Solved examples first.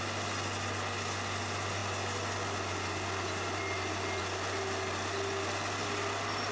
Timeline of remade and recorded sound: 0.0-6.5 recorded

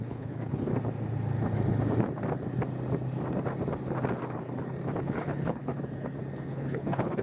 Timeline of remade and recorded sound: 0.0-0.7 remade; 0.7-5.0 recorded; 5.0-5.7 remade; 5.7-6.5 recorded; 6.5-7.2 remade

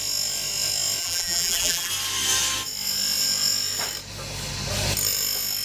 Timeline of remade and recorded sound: 0.0-1.0 recorded; 1.0-1.9 remade; 1.9-5.6 recorded

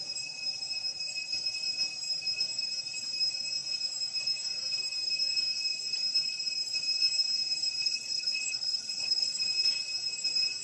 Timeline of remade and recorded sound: 0.0-7.8 recorded; 7.8-9.4 remade; 9.4-10.6 recorded